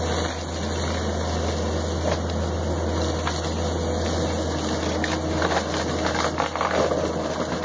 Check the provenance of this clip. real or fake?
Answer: real